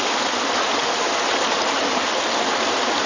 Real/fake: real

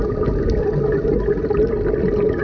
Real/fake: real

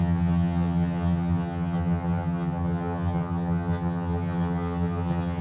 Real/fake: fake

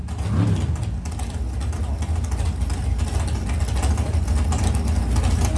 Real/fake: real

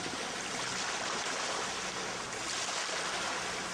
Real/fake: real